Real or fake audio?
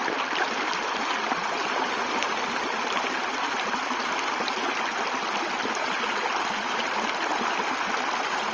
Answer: real